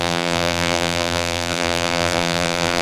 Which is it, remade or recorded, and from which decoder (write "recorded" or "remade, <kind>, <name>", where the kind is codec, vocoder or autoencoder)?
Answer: remade, vocoder, BigVGAN v2